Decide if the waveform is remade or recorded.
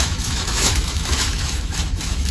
remade